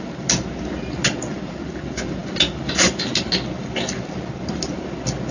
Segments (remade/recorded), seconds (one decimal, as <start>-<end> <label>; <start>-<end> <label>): 0.0-5.3 recorded